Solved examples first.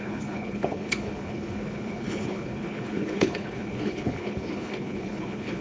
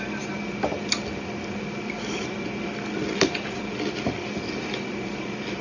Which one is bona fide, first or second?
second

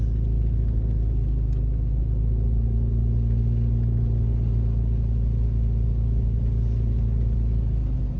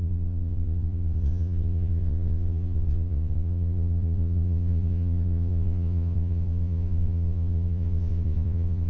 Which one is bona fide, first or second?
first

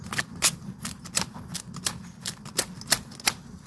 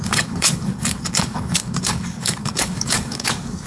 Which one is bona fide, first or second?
first